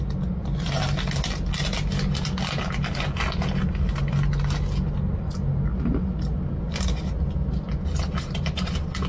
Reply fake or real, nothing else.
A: real